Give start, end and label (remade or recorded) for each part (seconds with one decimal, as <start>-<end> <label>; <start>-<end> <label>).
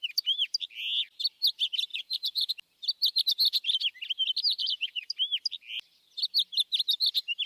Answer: 0.0-1.9 recorded; 1.9-2.5 remade; 2.5-4.5 recorded; 4.5-5.1 remade; 5.1-7.5 recorded